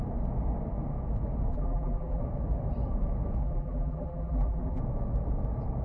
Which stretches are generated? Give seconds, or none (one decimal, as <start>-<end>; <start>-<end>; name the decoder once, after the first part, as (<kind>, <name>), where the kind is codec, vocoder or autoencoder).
1.5-2.2 (vocoder, BigVGAN v2); 3.4-4.8